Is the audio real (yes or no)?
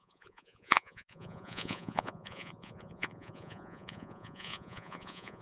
no